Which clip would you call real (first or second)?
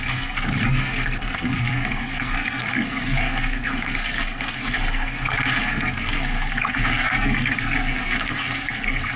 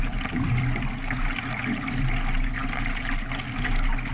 second